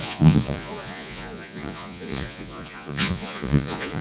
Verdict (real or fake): fake